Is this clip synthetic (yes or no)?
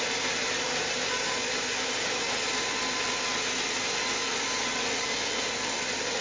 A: no